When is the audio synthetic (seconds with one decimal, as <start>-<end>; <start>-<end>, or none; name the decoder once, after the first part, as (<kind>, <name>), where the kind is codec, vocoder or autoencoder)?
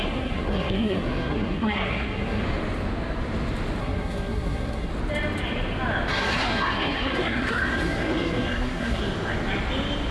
0.0-2.4 (codec, SNAC); 3.8-4.9; 6.1-9.0